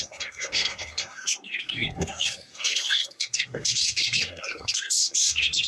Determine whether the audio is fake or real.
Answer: fake